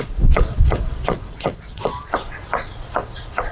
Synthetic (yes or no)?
yes